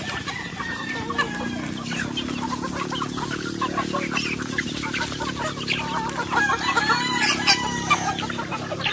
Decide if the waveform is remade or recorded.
recorded